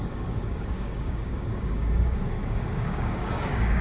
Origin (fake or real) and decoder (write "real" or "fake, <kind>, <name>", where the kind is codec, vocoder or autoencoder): fake, codec, DAC